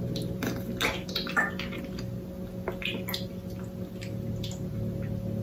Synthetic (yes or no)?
no